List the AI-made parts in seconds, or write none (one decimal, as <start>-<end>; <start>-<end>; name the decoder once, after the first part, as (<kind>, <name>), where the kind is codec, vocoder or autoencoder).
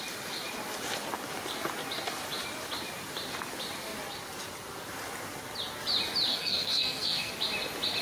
6.3-7.3 (codec, SNAC)